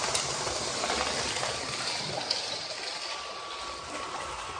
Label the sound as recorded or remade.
recorded